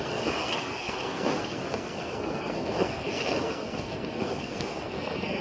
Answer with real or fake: fake